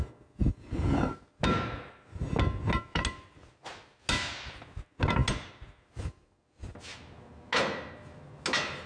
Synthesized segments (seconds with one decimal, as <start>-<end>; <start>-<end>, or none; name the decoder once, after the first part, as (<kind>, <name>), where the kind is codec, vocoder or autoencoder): none